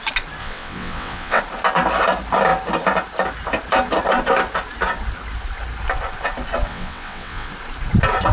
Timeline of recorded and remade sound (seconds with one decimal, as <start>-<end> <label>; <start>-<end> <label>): 0.0-0.4 recorded; 0.4-1.4 remade; 1.4-6.7 recorded; 6.7-7.5 remade; 7.5-8.3 recorded